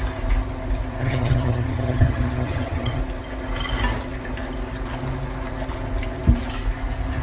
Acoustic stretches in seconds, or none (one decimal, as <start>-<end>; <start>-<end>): 0.0-1.0; 3.0-7.2